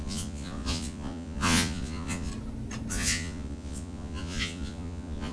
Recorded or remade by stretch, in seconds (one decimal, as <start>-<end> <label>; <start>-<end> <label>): 0.0-2.3 remade; 2.3-2.9 recorded; 2.9-5.3 remade